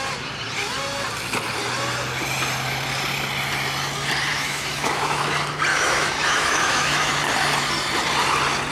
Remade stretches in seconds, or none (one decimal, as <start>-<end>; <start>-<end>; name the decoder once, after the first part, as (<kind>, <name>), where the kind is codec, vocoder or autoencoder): 4.3-5.2 (autoencoder, DAC-VAE); 5.7-7.1